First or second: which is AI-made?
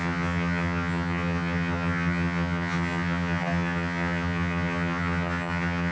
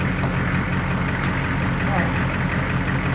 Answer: first